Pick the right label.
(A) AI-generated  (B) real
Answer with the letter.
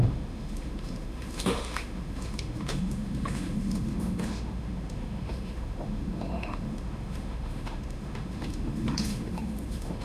A